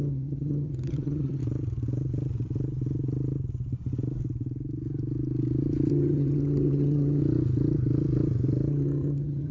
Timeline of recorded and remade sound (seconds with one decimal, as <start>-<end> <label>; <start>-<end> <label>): 0.0-1.4 remade; 1.4-5.9 recorded; 5.9-7.2 remade; 7.2-8.7 recorded; 8.7-9.5 remade